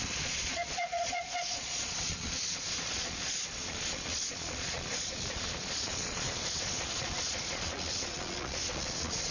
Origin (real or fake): fake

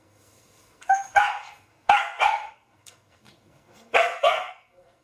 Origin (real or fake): fake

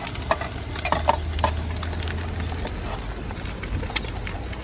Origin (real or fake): real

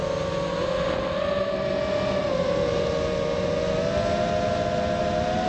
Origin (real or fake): real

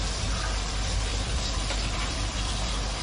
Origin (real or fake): fake